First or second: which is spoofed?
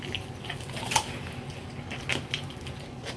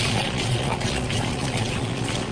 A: second